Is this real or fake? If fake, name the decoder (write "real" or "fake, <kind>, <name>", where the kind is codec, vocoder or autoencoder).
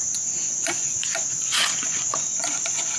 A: fake, vocoder, Vocos